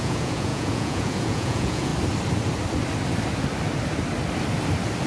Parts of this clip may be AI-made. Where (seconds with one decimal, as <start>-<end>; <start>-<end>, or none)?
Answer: 0.0-1.9